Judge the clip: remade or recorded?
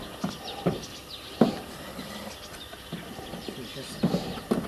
recorded